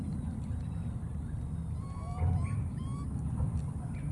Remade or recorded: remade